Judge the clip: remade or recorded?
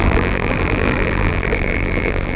remade